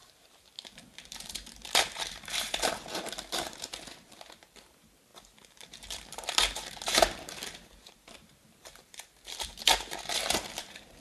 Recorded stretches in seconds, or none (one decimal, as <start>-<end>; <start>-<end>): none